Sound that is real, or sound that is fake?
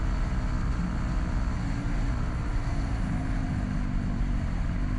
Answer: real